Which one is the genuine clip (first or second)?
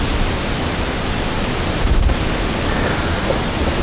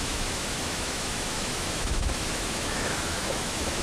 first